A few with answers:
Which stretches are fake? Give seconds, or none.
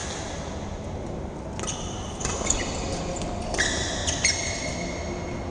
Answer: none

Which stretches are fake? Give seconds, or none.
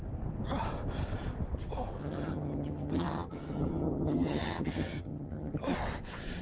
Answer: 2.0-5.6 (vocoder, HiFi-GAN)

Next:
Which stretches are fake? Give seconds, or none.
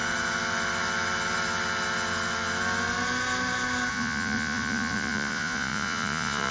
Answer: 3.9-6.5 (vocoder, Vocos)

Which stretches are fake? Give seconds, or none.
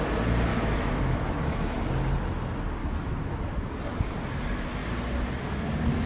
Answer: 0.5-1.8 (autoencoder, DAC-VAE); 2.8-3.7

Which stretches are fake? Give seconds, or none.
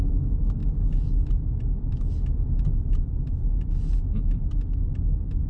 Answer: none